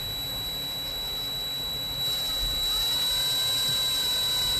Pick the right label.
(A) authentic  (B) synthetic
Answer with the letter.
A